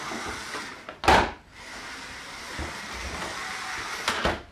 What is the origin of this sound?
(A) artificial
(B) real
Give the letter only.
B